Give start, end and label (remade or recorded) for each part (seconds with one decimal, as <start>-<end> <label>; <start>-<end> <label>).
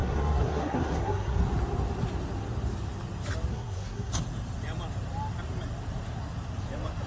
0.0-1.4 remade; 1.4-3.5 recorded; 3.5-4.1 remade; 4.1-7.1 recorded